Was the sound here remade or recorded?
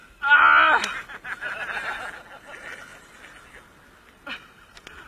recorded